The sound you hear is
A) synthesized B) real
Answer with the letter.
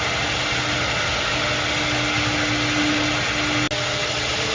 B